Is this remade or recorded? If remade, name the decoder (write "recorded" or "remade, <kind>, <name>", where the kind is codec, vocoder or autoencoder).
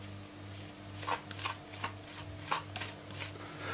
recorded